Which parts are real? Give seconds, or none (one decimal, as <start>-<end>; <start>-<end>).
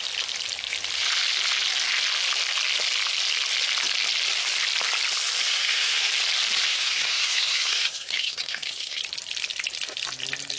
0.0-5.5; 6.1-6.7; 9.0-10.6